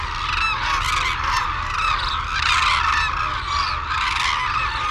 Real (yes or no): yes